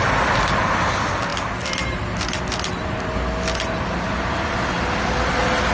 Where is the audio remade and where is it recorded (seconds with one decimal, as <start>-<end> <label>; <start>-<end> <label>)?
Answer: 0.0-5.7 recorded